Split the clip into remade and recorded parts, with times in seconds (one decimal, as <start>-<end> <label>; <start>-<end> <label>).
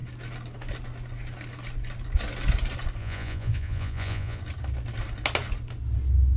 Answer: 0.0-3.0 recorded; 3.0-4.4 remade; 4.4-6.4 recorded